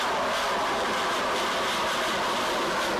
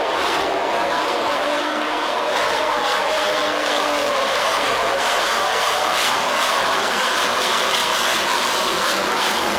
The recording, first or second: first